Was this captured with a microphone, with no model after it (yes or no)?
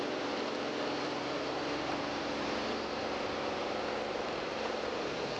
yes